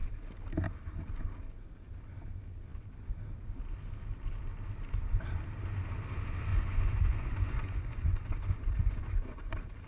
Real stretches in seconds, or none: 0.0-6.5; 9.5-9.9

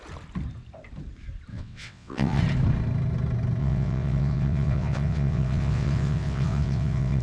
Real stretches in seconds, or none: 0.0-1.5; 2.4-3.6

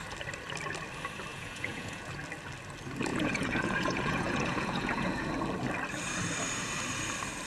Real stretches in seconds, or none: 0.0-1.3; 2.1-3.1; 5.3-7.5

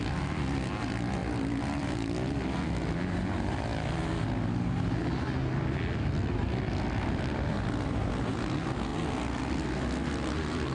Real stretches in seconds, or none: 0.0-10.7